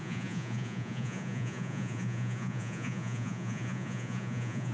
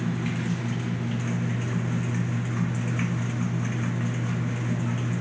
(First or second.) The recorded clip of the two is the second